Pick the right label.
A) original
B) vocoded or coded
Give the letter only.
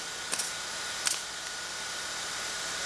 A